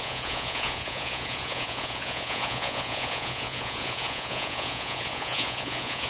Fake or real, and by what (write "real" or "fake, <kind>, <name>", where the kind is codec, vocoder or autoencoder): fake, vocoder, Vocos